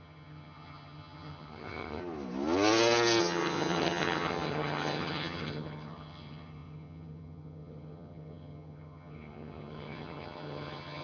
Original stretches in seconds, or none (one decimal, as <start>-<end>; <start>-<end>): 2.0-3.2